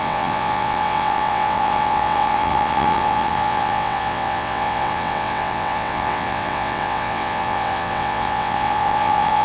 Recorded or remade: remade